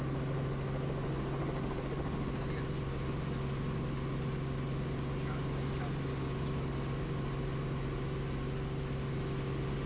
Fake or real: real